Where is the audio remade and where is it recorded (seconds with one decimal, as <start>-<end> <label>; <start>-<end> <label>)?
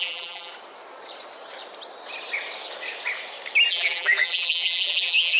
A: 0.0-0.5 remade; 0.5-3.7 recorded; 3.7-5.4 remade